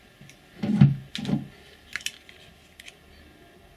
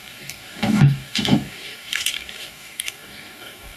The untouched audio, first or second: first